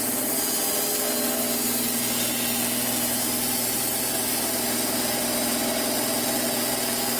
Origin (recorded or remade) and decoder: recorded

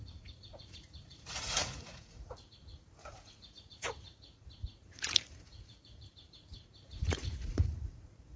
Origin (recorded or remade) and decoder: remade, vocoder, Vocos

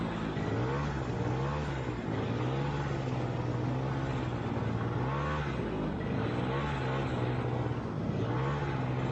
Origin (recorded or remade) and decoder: recorded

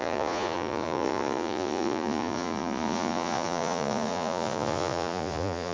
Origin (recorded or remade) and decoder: remade, vocoder, Vocos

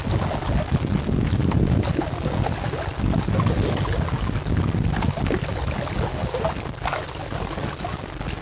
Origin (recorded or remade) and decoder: recorded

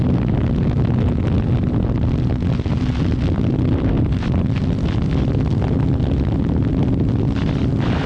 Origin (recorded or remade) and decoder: recorded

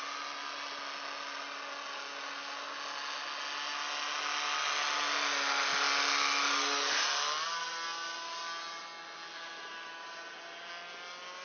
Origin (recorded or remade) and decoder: recorded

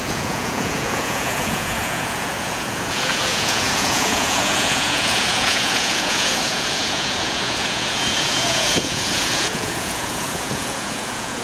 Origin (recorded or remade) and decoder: remade, vocoder, Vocos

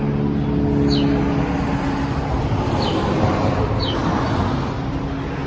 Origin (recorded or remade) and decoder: recorded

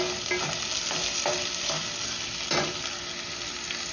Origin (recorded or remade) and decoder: recorded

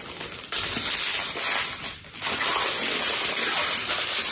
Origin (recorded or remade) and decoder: recorded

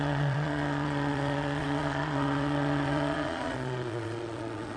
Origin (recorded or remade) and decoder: remade, vocoder, Vocos